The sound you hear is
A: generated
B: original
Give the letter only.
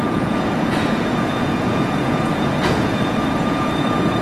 A